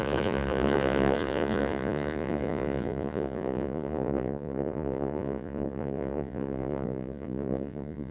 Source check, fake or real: fake